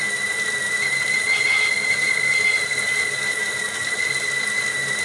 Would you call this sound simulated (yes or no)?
no